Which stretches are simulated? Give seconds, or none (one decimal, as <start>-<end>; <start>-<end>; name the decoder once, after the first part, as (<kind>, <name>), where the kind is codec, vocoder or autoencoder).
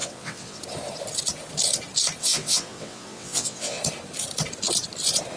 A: 0.0-0.6 (vocoder, WaveNeXt); 2.2-3.8